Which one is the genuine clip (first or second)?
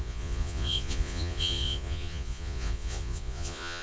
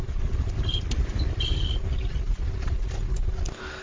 second